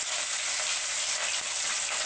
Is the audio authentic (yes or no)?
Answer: yes